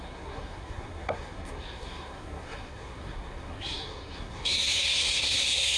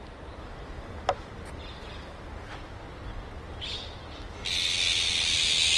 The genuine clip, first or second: second